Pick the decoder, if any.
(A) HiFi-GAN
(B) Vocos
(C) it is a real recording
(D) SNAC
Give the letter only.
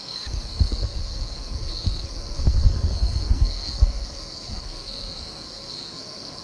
D